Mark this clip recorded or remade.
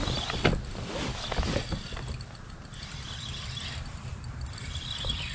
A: remade